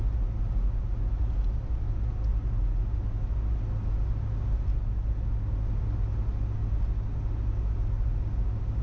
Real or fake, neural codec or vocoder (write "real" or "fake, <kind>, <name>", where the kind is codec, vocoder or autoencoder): real